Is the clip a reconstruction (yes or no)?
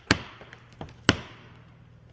no